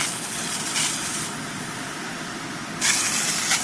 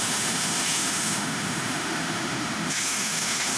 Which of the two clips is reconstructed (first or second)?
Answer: second